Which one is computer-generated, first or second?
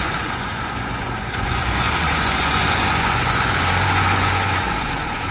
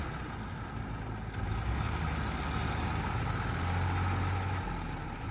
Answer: first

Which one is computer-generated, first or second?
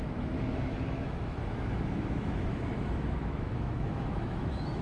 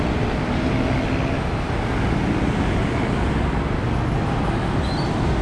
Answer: first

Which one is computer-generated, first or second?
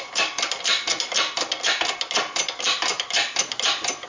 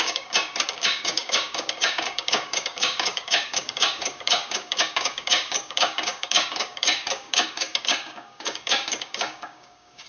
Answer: second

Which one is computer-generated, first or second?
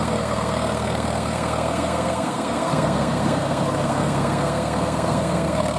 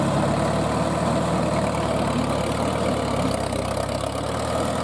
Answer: first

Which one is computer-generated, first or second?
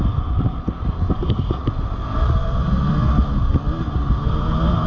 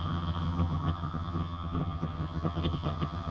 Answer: second